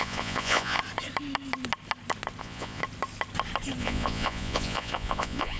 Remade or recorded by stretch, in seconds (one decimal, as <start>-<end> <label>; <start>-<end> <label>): 0.0-0.8 remade; 0.8-2.4 recorded; 2.4-2.8 remade; 2.8-3.8 recorded; 3.8-5.6 remade